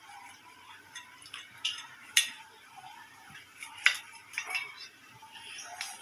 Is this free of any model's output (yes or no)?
no